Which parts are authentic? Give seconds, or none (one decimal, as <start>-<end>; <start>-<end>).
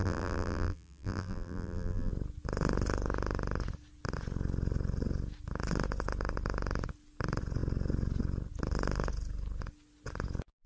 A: 2.1-10.7